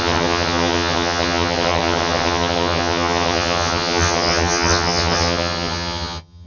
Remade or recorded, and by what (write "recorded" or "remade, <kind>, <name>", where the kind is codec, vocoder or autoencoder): remade, vocoder, HiFi-GAN